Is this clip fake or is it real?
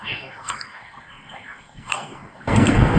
fake